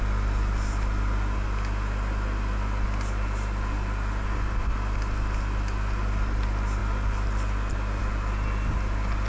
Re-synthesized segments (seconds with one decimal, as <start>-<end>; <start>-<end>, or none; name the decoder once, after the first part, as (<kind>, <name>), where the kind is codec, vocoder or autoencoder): none